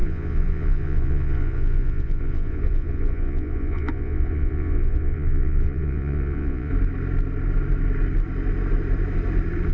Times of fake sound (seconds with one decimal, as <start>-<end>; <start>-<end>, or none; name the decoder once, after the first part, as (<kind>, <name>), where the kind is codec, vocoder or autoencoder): 0.0-6.7 (vocoder, Vocos)